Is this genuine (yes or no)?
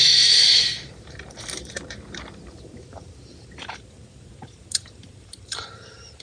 no